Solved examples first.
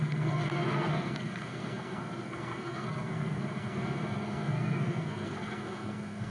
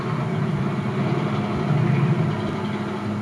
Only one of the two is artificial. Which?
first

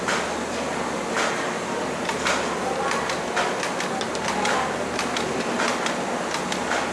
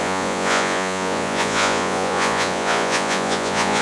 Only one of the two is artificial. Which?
second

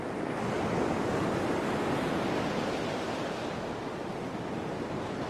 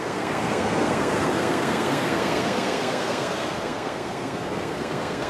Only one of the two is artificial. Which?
second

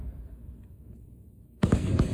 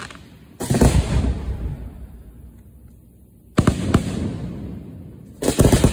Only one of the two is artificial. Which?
first